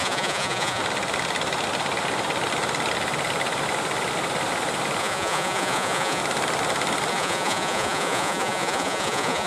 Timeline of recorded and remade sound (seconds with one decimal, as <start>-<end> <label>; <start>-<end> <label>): 0.0-0.8 remade; 0.8-5.0 recorded; 5.0-6.2 remade; 6.2-7.1 recorded; 7.1-9.5 remade